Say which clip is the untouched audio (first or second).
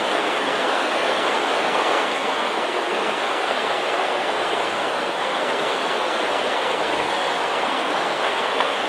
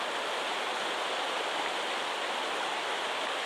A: second